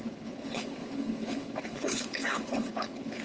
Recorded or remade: remade